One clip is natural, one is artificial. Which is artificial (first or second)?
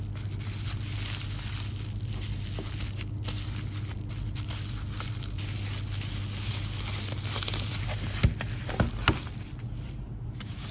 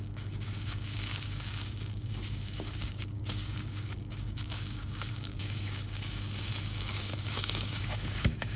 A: second